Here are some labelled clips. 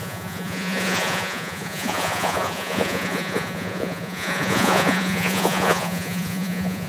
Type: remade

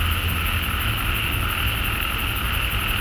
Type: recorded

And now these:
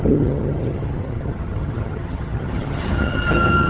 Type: remade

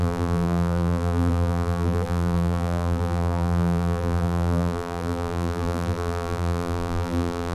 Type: remade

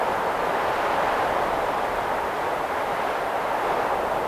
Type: recorded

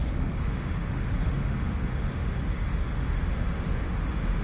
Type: remade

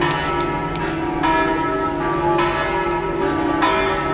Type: recorded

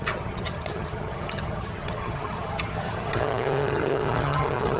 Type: remade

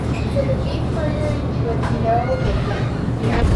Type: recorded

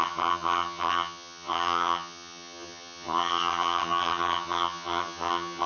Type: remade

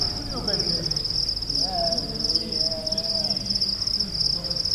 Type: recorded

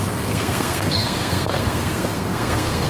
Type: remade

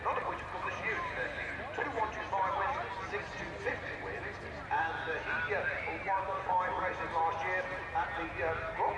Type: recorded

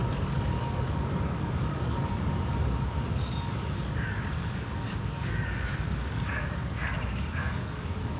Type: remade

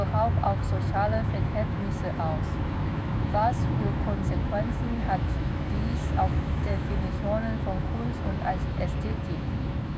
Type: remade